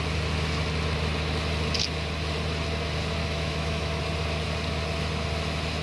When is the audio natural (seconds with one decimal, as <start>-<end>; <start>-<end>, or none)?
0.0-3.2; 4.0-5.8